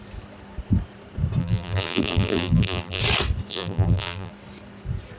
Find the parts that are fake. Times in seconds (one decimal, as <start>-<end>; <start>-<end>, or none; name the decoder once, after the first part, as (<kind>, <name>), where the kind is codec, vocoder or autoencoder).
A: 1.4-3.0 (vocoder, BigVGAN v2); 3.5-4.3